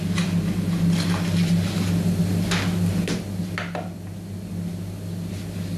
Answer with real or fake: real